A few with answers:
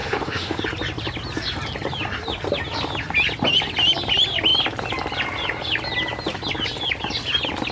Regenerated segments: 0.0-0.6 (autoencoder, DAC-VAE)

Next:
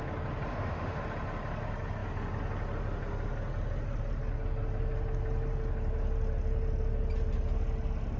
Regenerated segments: 0.5-1.0 (autoencoder, DAC-VAE)

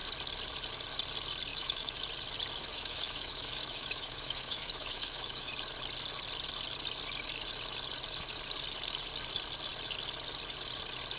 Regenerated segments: 1.5-2.0 (autoencoder, DAC-VAE); 2.6-5.5

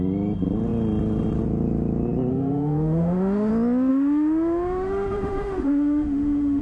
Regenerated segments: 2.3-3.5 (autoencoder, DAC-VAE); 3.9-6.6